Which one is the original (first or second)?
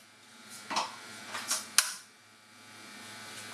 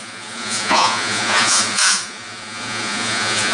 first